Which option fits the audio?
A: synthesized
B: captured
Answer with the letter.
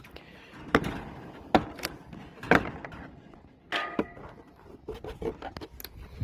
B